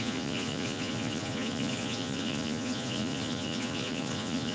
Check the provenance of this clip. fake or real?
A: fake